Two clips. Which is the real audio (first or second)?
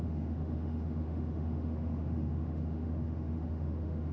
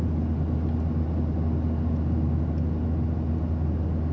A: second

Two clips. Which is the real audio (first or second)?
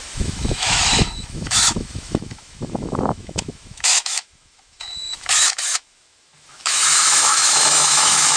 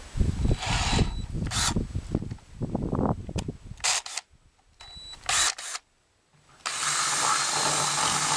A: second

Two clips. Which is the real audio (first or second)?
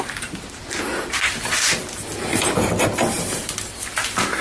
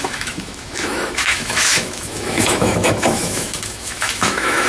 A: first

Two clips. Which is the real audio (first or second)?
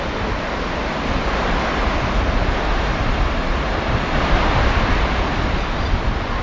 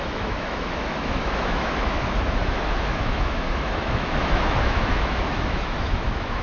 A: first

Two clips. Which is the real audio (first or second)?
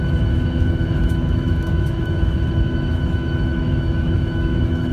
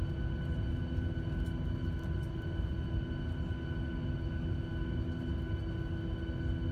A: second